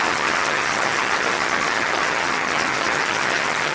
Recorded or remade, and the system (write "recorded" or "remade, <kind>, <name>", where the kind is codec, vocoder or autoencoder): remade, vocoder, HiFi-GAN